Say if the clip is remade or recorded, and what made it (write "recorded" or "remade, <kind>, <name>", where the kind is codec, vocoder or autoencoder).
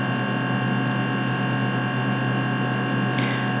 recorded